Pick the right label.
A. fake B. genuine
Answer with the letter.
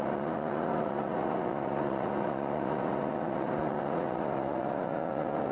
A